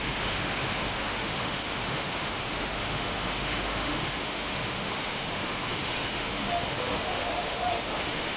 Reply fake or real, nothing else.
fake